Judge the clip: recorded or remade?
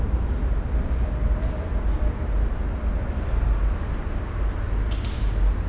recorded